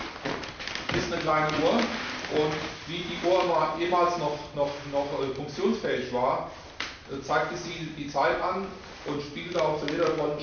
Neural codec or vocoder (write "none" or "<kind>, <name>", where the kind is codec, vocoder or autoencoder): none